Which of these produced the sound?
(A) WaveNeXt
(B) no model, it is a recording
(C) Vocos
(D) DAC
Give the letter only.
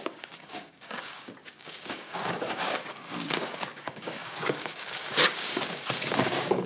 D